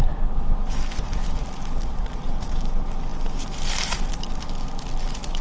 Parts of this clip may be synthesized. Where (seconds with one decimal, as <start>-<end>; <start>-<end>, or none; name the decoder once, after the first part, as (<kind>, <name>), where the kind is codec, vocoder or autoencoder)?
none